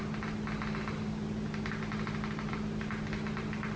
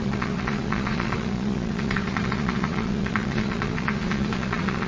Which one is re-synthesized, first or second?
second